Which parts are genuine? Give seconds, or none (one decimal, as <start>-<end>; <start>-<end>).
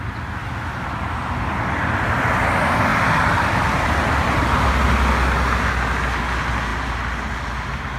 0.0-8.0